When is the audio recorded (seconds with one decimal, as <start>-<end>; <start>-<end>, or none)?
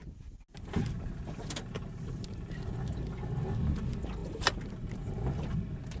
0.0-6.0